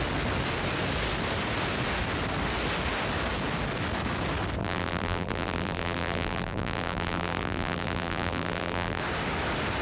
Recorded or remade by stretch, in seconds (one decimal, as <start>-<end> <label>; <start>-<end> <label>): 0.0-4.6 recorded; 4.6-9.0 remade; 9.0-9.8 recorded